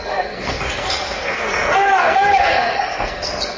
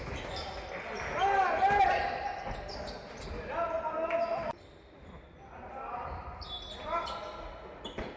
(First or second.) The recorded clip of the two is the second